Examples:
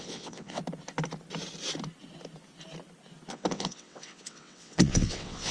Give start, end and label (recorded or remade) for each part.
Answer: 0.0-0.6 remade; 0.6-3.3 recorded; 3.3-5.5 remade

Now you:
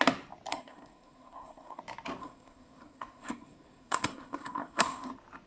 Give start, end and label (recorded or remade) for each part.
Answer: 0.0-0.5 recorded; 0.5-1.8 remade; 1.8-2.2 recorded; 2.2-5.1 remade; 5.1-5.5 recorded